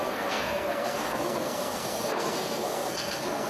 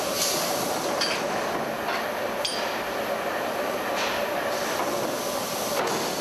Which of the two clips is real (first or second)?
second